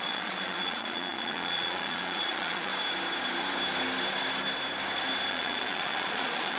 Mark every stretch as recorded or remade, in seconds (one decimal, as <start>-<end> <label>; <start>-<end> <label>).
0.0-2.7 remade; 2.7-5.3 recorded; 5.3-6.6 remade